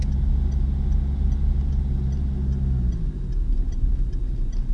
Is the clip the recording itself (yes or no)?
yes